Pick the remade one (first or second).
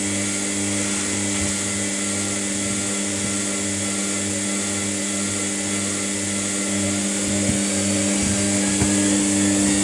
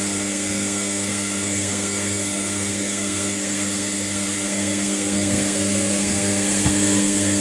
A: second